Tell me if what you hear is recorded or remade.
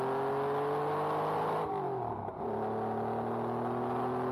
recorded